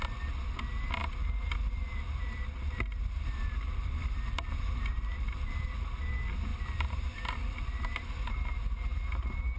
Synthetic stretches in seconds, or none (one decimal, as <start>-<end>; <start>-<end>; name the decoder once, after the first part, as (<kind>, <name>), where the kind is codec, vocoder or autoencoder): 1.0-5.9 (vocoder, BigVGAN v2); 6.5-8.0